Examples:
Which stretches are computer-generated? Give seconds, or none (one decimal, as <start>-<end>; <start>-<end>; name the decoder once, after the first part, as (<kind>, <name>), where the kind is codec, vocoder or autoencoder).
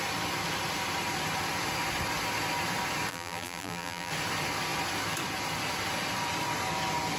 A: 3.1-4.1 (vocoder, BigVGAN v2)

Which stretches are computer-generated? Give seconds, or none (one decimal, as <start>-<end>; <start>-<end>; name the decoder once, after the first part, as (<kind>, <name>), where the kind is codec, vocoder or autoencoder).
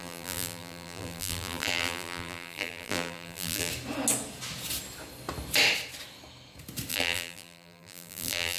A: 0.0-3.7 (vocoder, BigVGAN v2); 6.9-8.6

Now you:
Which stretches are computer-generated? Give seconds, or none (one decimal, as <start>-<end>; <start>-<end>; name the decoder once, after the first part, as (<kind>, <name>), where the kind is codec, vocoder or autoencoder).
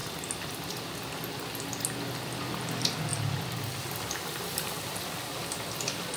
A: 2.7-3.1 (vocoder, BigVGAN v2); 4.4-6.2